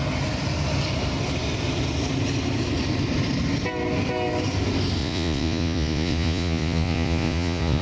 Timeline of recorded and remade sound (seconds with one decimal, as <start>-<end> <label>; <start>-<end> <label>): 0.0-5.0 recorded; 5.0-7.8 remade